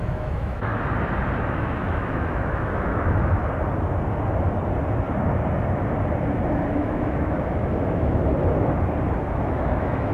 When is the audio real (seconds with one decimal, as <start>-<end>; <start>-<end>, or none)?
0.7-1.4; 3.4-6.7; 8.2-9.3